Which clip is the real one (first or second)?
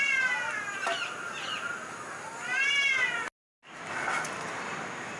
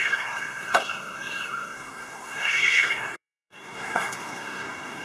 first